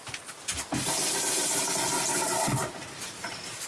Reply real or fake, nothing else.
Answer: real